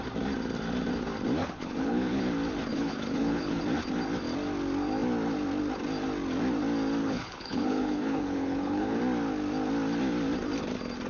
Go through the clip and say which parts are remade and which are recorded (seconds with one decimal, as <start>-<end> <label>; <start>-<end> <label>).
0.0-1.4 recorded; 1.4-2.2 remade; 2.2-2.7 recorded; 2.7-3.6 remade; 3.6-7.0 recorded; 7.0-9.0 remade; 9.0-11.1 recorded